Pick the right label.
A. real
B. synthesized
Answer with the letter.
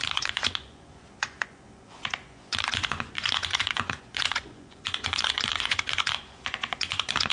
B